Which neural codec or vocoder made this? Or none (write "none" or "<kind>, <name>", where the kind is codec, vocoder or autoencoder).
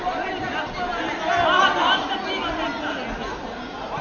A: none